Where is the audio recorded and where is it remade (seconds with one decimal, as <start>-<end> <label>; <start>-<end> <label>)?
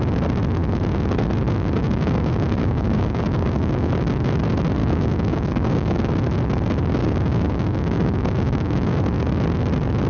0.0-1.8 recorded; 1.8-3.9 remade; 3.9-4.8 recorded; 4.8-6.1 remade; 6.1-7.0 recorded; 7.0-9.0 remade; 9.0-10.1 recorded